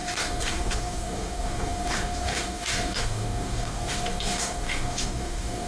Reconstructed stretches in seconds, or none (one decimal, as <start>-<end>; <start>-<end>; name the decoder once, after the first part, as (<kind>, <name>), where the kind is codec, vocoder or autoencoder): 0.0-5.7 (codec, DAC)